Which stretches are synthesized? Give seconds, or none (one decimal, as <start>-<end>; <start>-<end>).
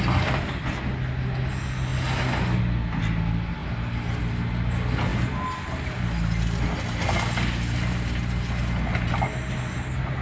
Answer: none